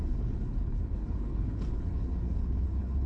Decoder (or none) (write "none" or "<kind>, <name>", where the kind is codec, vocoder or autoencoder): codec, HILCodec